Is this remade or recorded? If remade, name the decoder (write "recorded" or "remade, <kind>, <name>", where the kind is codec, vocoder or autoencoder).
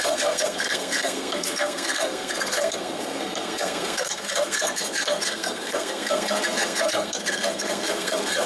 remade, codec, SNAC